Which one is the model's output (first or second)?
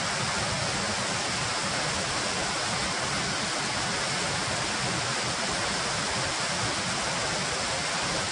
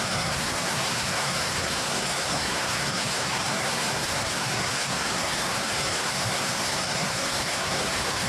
second